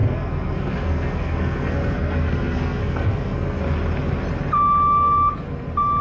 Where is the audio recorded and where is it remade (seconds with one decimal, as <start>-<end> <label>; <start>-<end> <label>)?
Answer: 0.0-3.6 remade; 3.6-6.0 recorded